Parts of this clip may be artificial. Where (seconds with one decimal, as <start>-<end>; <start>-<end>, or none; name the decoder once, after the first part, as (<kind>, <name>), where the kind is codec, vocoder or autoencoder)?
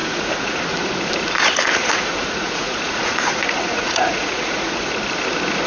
0.0-0.6 (vocoder, Vocos); 1.8-4.9